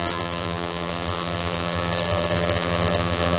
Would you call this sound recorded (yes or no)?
no